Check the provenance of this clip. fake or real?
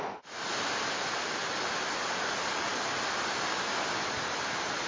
real